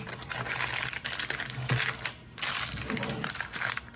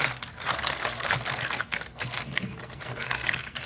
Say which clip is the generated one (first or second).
second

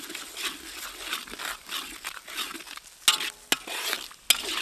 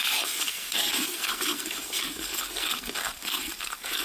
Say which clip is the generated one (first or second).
second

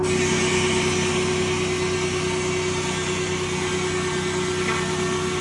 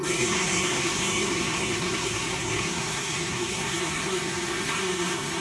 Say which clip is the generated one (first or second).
second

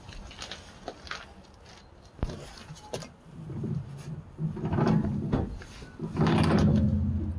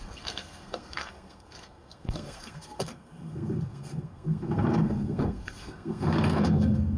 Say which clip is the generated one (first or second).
second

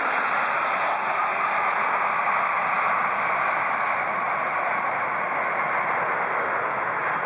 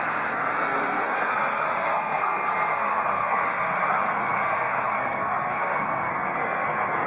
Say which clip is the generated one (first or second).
second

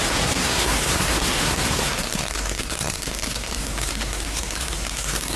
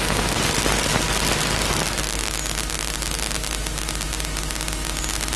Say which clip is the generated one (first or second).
first